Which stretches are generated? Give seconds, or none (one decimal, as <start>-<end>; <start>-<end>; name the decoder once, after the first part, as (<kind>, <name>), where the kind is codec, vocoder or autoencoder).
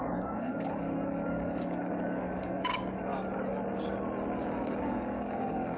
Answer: 0.0-3.1 (codec, DAC); 4.8-5.8